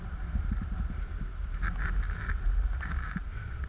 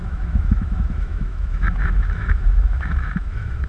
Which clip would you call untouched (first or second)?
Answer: first